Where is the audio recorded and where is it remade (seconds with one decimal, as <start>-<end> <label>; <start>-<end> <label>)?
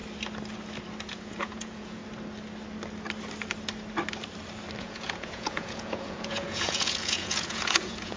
0.0-1.1 recorded; 1.1-2.0 remade; 2.0-4.8 recorded; 4.8-8.2 remade